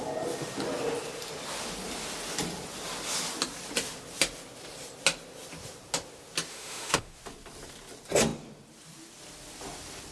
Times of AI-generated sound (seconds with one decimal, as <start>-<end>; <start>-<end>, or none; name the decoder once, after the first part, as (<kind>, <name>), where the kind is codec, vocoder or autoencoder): 6.5-7.2 (autoencoder, DAC-VAE)